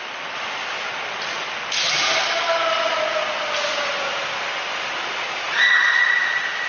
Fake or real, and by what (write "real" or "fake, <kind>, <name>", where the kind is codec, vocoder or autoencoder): real